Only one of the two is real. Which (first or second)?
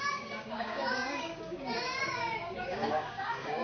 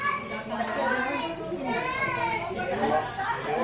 second